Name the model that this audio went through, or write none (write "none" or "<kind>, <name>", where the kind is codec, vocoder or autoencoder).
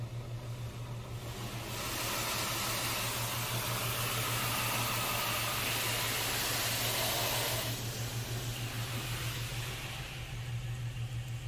none